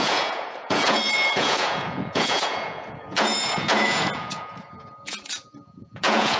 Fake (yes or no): yes